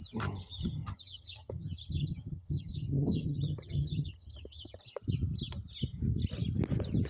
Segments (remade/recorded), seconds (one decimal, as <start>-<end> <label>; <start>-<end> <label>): 0.0-0.5 recorded; 0.5-4.8 remade; 4.8-7.1 recorded